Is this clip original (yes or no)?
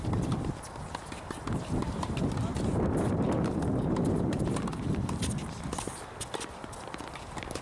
no